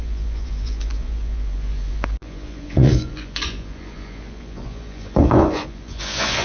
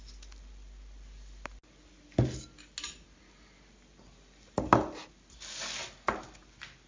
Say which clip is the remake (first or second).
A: first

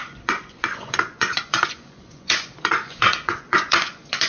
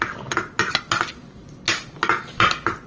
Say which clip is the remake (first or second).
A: first